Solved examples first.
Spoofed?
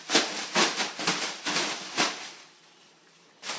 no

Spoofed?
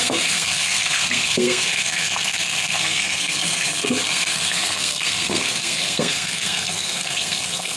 yes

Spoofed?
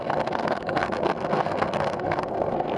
yes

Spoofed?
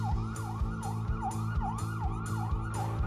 no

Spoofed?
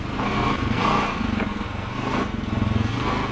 yes